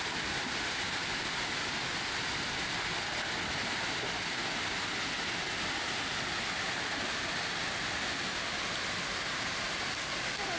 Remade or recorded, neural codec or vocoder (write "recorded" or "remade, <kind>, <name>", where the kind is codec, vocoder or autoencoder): recorded